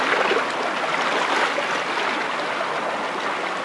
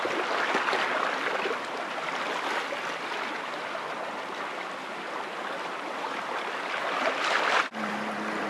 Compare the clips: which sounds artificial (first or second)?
second